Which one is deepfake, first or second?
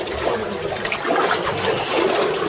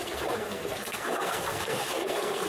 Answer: second